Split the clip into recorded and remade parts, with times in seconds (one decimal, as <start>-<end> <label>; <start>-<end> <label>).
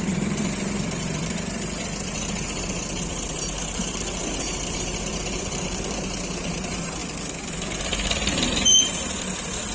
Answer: 0.0-9.7 remade